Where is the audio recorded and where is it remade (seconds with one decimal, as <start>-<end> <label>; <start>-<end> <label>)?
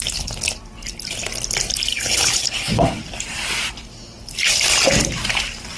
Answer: 0.0-1.9 recorded; 1.9-3.0 remade; 3.0-5.8 recorded